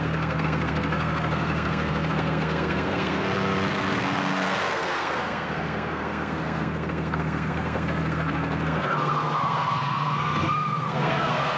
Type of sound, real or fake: fake